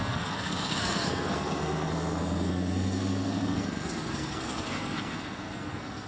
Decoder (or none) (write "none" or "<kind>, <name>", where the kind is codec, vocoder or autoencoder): codec, SNAC